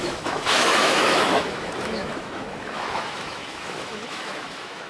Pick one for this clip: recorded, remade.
remade